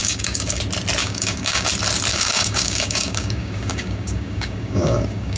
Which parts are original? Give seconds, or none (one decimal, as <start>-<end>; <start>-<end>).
0.6-1.0; 1.7-2.1